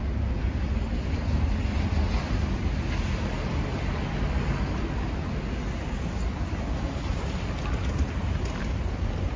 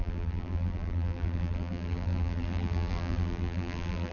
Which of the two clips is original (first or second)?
first